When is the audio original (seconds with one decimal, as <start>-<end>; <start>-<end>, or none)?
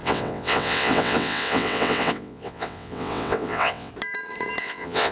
3.9-4.6